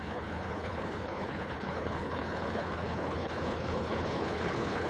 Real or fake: fake